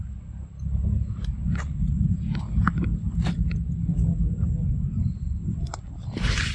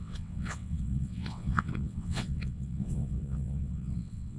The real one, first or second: first